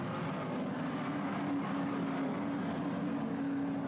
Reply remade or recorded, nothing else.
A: recorded